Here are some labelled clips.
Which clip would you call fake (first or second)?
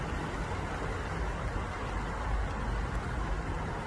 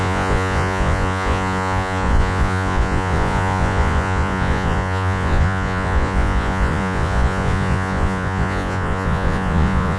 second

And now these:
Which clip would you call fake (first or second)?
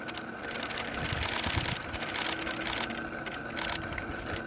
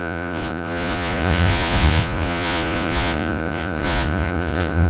second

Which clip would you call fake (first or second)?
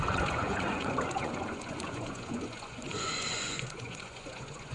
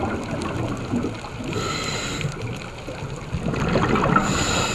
first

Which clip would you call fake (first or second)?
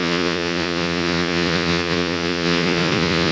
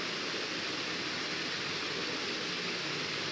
first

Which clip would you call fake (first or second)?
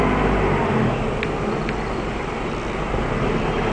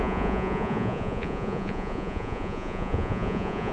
second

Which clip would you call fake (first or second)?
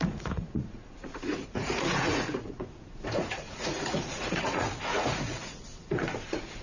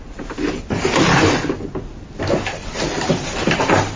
first